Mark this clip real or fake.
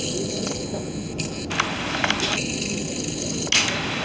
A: real